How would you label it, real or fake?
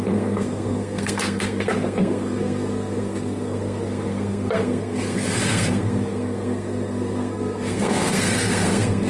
fake